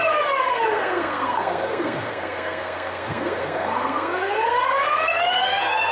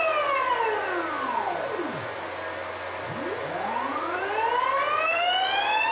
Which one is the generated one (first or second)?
first